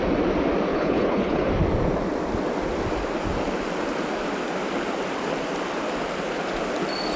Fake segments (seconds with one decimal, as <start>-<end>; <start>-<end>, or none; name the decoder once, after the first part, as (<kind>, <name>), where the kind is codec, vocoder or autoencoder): 0.7-1.5 (codec, HILCodec)